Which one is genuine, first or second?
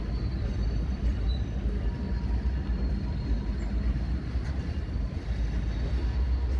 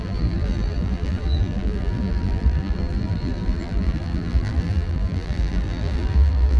first